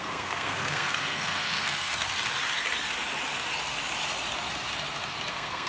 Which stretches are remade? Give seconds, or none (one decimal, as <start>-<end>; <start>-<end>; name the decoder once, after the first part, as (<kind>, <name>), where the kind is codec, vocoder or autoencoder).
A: 0.0-1.9 (codec, SNAC); 5.3-5.7